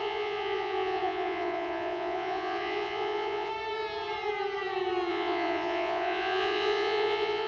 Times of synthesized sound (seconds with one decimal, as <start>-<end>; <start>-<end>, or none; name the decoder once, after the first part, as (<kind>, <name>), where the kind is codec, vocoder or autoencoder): 0.0-3.5 (vocoder, Vocos); 5.1-7.5